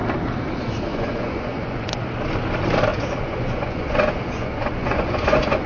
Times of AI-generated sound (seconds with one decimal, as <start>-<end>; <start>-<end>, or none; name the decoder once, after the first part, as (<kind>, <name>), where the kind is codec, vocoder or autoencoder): 0.9-2.0 (vocoder, Vocos); 2.9-5.7